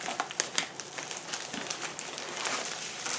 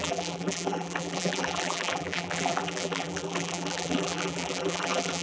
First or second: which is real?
first